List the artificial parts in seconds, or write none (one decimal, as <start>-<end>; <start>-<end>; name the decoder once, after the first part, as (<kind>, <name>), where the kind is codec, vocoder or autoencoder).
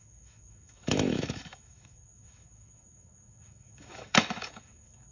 0.0-5.1 (autoencoder, DAC-VAE)